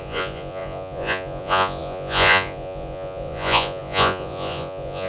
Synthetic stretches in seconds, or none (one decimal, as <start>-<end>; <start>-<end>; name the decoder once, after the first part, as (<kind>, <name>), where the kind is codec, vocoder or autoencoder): 0.0-5.1 (vocoder, Vocos)